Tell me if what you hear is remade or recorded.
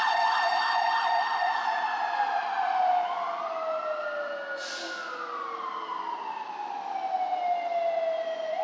recorded